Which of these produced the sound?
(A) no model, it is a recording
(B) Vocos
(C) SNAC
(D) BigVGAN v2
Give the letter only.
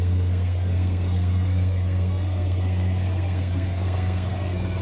C